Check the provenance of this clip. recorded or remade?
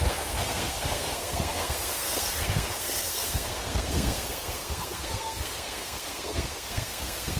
remade